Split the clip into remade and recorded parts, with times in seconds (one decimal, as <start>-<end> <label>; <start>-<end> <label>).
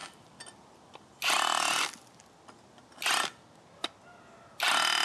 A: 0.0-5.0 recorded